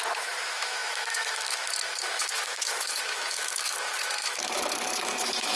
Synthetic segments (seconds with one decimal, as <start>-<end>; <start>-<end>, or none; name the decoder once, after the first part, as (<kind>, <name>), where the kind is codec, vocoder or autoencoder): 0.0-5.6 (autoencoder, DAC-VAE)